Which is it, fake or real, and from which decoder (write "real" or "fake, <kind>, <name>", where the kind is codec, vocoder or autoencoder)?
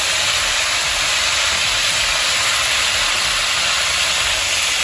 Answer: real